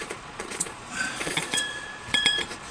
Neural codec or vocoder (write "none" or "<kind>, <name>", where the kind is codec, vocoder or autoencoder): vocoder, Vocos